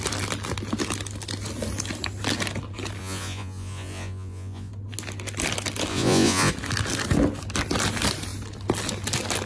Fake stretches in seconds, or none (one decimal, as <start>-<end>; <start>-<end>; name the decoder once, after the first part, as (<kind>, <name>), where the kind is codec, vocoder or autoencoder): 3.0-4.7 (vocoder, Vocos); 5.9-6.5